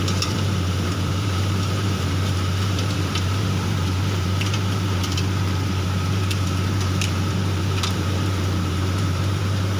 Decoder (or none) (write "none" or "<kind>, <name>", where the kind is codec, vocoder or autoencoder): vocoder, BigVGAN v2